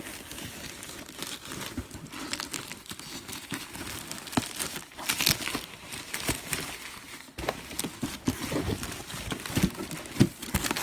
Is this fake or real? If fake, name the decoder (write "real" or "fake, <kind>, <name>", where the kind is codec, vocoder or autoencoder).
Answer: real